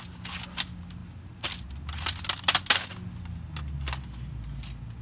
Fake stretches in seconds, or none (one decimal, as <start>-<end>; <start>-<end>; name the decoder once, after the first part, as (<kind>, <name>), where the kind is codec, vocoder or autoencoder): none